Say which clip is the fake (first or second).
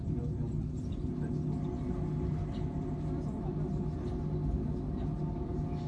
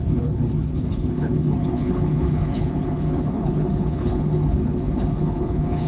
second